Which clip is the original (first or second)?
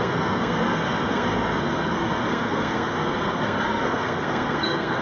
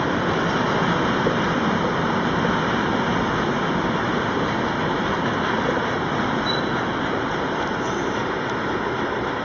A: second